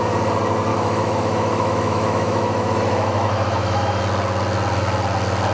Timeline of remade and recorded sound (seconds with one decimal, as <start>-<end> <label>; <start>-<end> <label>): 0.0-0.7 recorded; 0.7-4.0 remade; 4.0-5.5 recorded